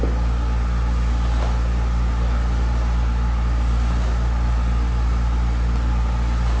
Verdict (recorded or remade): recorded